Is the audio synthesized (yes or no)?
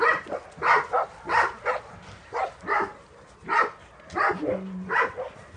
no